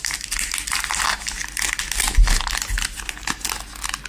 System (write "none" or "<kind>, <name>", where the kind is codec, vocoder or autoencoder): none